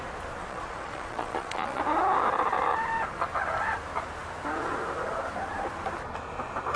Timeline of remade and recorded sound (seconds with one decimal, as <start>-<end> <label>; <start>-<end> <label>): 0.0-0.4 recorded; 0.4-1.8 remade; 1.8-6.8 recorded